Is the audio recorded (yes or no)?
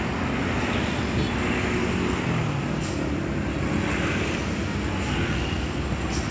yes